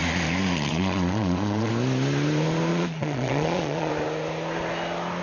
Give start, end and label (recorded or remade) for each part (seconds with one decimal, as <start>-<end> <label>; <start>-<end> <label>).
0.0-0.7 recorded; 0.7-1.7 remade; 1.7-2.7 recorded; 2.7-3.9 remade; 3.9-5.2 recorded